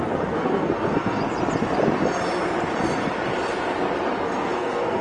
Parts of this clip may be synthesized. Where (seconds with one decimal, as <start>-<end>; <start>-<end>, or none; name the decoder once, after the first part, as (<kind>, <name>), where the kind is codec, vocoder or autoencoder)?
0.0-1.2 (codec, SNAC); 4.2-5.0